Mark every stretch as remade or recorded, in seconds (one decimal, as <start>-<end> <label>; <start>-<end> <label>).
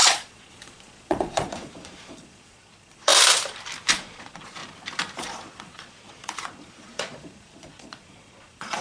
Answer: 0.0-3.1 remade; 3.1-3.9 recorded; 3.9-4.6 remade; 4.6-5.2 recorded; 5.2-8.8 remade